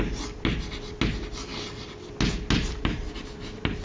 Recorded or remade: recorded